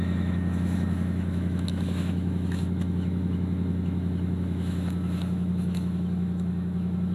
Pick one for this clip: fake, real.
fake